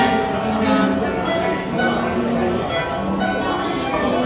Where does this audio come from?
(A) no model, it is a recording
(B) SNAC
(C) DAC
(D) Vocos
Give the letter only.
A